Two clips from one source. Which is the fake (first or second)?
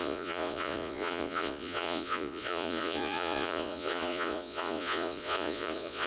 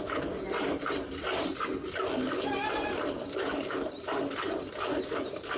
first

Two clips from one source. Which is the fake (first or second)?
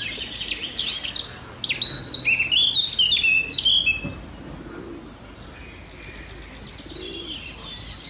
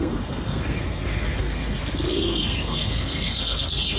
second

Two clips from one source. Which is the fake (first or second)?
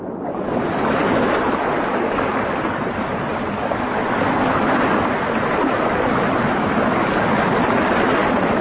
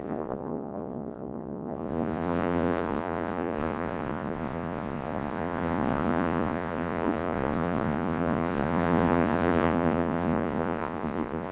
second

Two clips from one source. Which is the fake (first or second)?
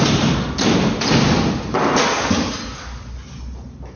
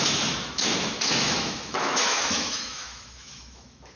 second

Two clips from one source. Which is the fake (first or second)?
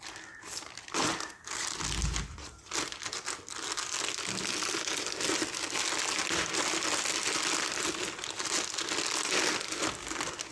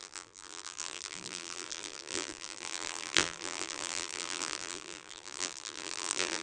second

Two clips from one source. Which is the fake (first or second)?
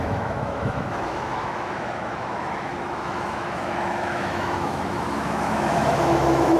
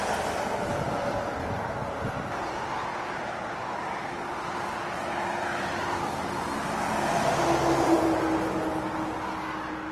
first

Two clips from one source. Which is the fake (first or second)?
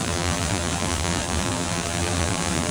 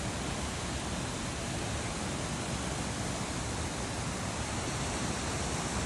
first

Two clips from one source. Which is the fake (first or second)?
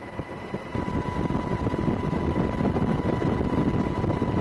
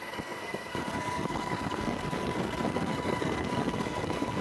second